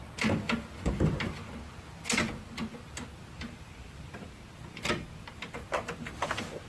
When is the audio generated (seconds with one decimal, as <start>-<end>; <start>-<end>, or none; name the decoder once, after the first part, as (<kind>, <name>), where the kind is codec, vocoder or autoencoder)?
none